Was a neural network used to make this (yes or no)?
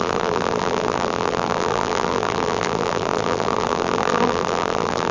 yes